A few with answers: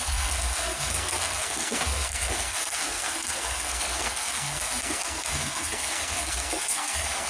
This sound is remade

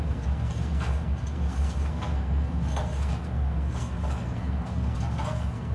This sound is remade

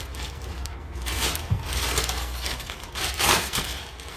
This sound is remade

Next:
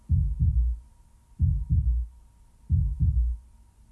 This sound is recorded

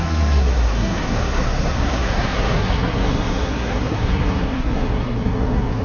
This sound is remade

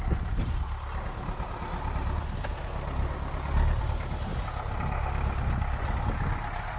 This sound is recorded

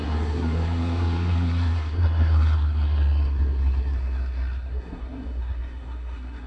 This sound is remade